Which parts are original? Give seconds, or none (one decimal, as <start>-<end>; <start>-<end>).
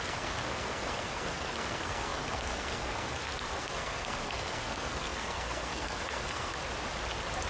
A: 6.6-7.5